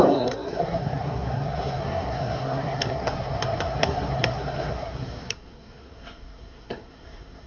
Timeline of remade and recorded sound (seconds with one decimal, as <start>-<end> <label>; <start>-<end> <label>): 0.0-7.5 remade